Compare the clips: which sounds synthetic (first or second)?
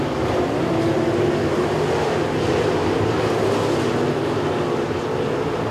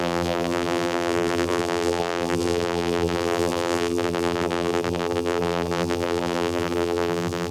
second